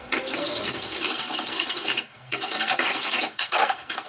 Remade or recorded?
remade